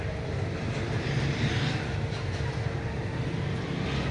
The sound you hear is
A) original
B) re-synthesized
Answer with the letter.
A